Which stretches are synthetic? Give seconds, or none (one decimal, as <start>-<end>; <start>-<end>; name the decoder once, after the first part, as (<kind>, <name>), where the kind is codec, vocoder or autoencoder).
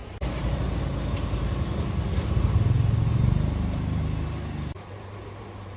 none